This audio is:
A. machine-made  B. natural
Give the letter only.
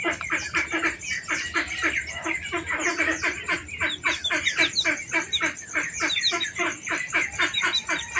B